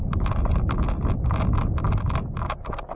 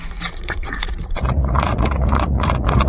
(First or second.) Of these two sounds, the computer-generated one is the second